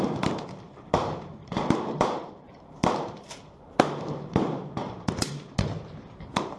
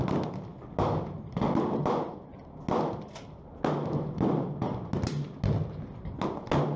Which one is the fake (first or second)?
first